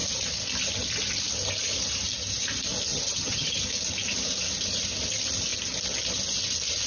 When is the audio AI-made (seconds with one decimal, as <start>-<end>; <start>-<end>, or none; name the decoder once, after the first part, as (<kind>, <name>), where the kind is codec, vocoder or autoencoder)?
2.9-3.6 (vocoder, HiFi-GAN)